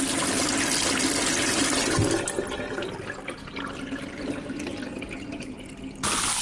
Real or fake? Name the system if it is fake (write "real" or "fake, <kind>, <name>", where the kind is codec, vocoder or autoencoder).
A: real